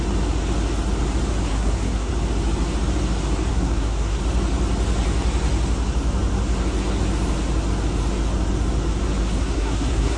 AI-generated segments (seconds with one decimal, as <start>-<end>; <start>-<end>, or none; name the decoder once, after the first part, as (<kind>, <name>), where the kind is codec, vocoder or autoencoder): 1.5-2.1 (codec, SNAC); 3.5-4.2; 9.2-10.2